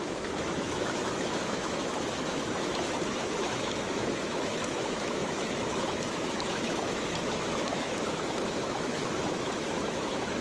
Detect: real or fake fake